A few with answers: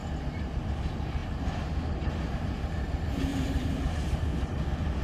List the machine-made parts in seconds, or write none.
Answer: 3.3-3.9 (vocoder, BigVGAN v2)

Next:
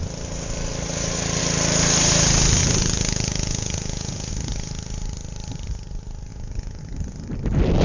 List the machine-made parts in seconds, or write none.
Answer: 2.6-4.3 (vocoder, Vocos); 6.3-6.8

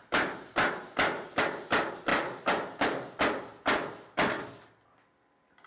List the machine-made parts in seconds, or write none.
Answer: none